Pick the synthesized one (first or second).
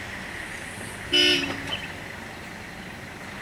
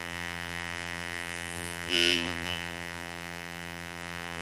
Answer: second